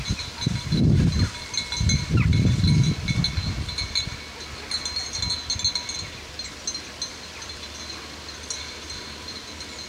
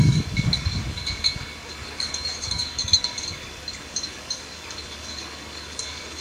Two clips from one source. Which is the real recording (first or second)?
first